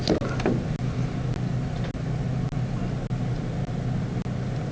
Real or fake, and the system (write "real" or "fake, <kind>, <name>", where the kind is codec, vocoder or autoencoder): real